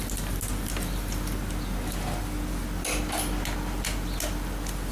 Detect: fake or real real